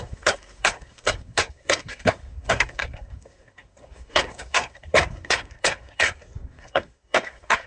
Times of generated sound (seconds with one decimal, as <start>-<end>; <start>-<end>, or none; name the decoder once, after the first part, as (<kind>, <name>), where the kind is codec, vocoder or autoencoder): 0.0-7.7 (codec, SNAC)